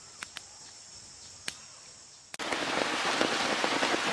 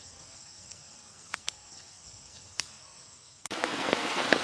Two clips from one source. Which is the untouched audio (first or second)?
first